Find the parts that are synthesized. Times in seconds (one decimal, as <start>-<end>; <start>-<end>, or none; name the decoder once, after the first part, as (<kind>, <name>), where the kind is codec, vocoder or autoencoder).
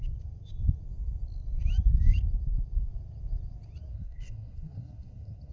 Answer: 3.9-5.5 (codec, SNAC)